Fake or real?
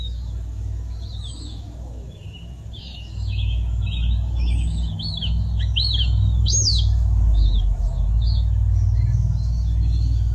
fake